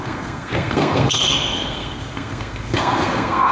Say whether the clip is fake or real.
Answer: fake